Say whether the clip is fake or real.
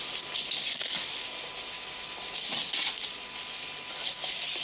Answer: real